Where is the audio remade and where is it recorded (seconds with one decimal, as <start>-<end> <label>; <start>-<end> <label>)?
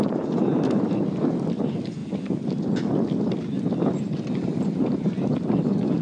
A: 0.0-6.0 recorded